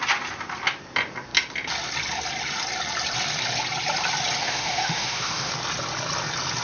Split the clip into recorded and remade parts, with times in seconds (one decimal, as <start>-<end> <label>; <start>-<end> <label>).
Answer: 0.0-4.4 recorded; 4.4-5.5 remade; 5.5-6.6 recorded